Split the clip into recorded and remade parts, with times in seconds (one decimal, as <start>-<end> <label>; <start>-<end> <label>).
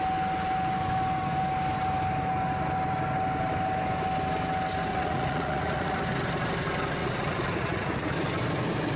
0.0-4.9 recorded; 4.9-6.0 remade; 6.0-7.0 recorded; 7.0-8.1 remade; 8.1-9.0 recorded